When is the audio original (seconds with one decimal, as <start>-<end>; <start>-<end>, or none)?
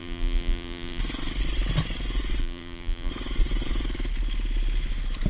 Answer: 1.0-2.4; 3.1-5.3